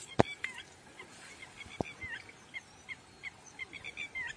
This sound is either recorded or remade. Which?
recorded